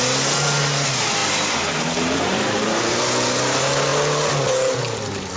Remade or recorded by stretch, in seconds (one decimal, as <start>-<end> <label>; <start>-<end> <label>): 0.0-1.2 recorded; 1.2-3.0 remade; 3.0-5.4 recorded